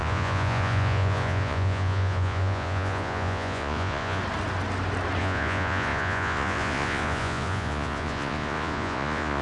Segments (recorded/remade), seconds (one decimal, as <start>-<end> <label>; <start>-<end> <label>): 0.0-4.2 remade; 4.2-5.2 recorded; 5.2-9.4 remade